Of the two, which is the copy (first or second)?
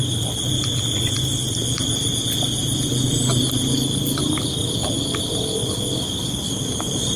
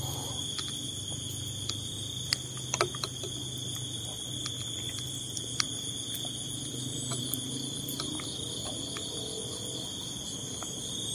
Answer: first